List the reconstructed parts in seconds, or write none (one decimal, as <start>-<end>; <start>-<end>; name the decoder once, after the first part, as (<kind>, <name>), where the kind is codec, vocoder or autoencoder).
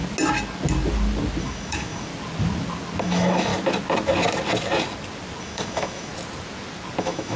1.4-2.1 (autoencoder, DAC-VAE); 3.0-3.5; 5.4-6.1; 7.0-7.4